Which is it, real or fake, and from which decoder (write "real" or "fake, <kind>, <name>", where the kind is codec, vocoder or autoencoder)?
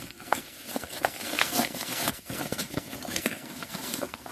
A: fake, codec, SNAC